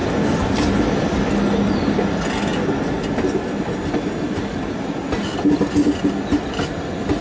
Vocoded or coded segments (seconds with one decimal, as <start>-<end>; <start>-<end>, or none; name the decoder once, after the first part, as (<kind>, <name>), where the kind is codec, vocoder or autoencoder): none